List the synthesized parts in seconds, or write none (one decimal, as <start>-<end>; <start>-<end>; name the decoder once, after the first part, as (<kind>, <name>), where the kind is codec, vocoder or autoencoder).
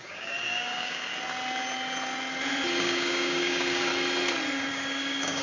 0.0-1.1 (codec, DAC); 2.8-3.9; 4.7-5.4